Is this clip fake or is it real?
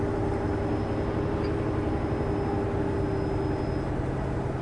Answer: real